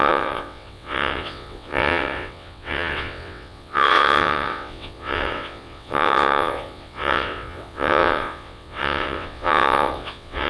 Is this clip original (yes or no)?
no